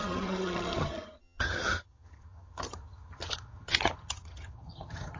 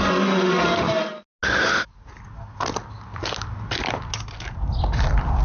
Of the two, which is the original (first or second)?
second